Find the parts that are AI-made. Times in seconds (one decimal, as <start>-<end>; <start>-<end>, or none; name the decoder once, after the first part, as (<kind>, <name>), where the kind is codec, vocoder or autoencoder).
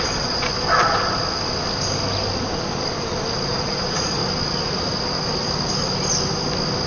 0.0-0.5 (vocoder, Vocos); 3.5-4.2